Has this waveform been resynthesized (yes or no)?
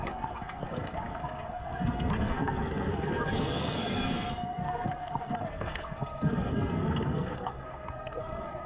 yes